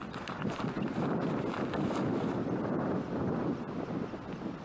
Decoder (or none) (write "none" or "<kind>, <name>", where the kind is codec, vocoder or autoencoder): none